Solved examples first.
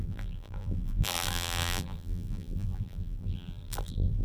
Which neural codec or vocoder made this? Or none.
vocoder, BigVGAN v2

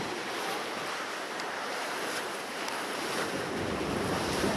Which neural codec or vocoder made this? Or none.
vocoder, BigVGAN v2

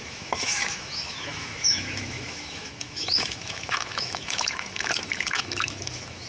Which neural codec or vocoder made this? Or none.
autoencoder, DAC-VAE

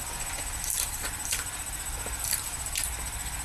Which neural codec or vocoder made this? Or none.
vocoder, BigVGAN v2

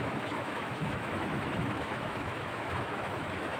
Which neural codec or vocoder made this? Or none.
autoencoder, DAC-VAE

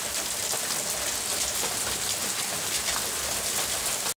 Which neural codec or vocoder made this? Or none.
none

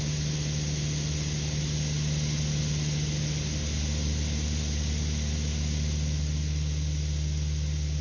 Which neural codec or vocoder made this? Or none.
none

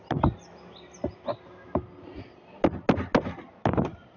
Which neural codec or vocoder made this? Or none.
none